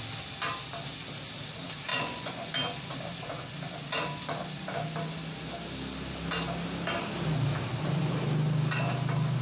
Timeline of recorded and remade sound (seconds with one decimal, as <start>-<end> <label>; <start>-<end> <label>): 0.0-1.9 recorded; 1.9-2.5 remade; 2.5-9.4 recorded

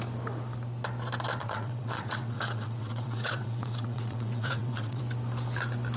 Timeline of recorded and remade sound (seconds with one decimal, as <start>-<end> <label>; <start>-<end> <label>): 0.0-1.4 recorded; 1.4-5.0 remade; 5.0-6.0 recorded

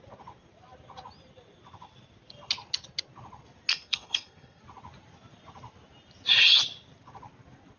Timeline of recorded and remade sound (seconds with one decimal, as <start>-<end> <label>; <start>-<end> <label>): 0.0-3.7 recorded; 3.7-4.6 remade; 4.6-7.8 recorded

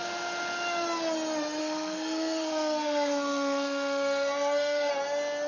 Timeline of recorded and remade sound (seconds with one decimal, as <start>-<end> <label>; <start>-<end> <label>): 0.0-1.6 recorded; 1.6-4.9 remade; 4.9-5.5 recorded

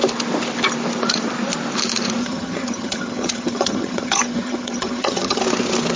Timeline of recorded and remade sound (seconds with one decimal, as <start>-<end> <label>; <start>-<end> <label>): 0.0-2.2 recorded; 2.2-5.4 remade; 5.4-6.0 recorded

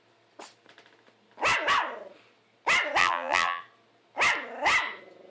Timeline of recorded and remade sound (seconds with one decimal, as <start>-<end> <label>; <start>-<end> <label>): 0.0-3.0 recorded; 3.0-3.6 remade; 3.6-5.3 recorded

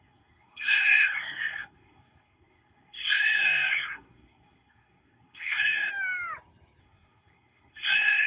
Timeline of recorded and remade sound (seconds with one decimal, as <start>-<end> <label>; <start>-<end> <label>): 0.0-5.9 remade; 5.9-6.8 recorded; 6.8-8.3 remade